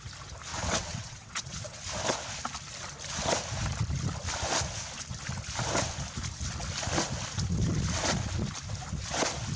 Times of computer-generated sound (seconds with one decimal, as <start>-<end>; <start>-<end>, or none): 0.5-1.8